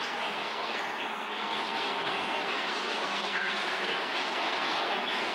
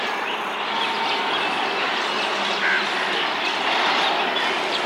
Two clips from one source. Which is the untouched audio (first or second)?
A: second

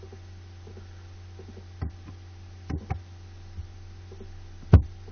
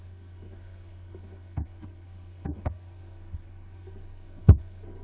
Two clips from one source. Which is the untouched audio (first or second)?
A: first